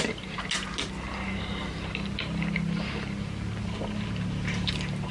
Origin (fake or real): real